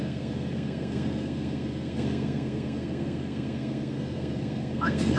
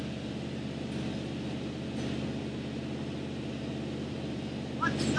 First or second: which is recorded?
second